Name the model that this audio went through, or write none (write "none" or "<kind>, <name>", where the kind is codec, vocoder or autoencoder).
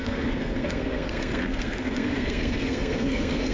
codec, SNAC